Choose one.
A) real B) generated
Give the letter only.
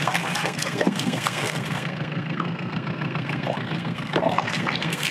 B